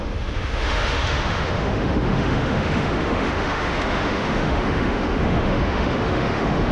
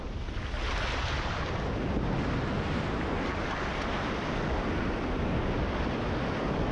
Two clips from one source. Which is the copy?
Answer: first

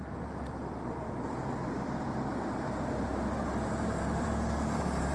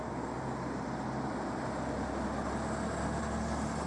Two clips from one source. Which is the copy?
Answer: first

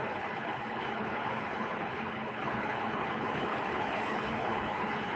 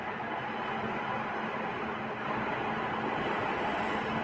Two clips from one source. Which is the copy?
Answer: first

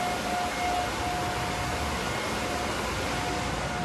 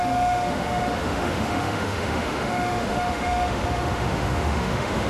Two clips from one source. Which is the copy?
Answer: second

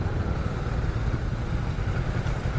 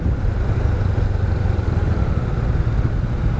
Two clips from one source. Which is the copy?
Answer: first